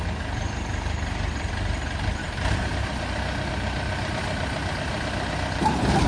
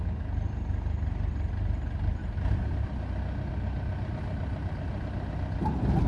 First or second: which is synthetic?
first